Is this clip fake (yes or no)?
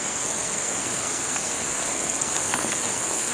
yes